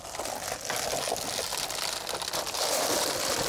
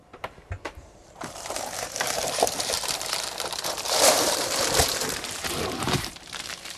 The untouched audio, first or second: first